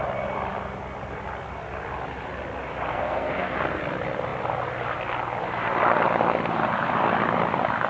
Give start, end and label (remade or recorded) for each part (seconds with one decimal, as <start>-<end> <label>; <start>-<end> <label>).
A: 0.0-2.9 recorded; 2.9-3.8 remade; 3.8-7.9 recorded